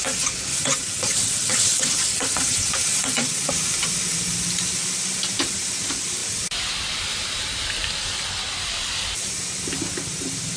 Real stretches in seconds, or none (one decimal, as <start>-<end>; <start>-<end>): 0.0-0.5; 3.5-10.6